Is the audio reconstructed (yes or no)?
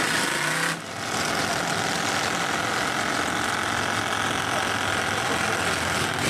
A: no